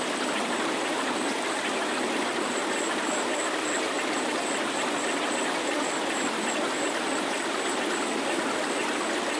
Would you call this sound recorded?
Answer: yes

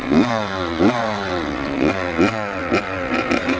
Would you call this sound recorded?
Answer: no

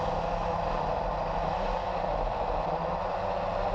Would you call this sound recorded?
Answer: yes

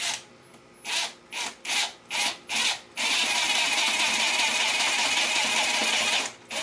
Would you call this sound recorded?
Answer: yes